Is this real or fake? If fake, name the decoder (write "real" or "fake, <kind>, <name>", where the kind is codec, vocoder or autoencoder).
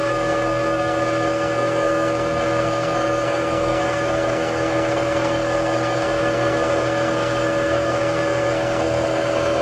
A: fake, codec, SNAC